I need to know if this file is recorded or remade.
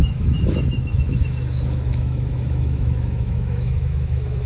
remade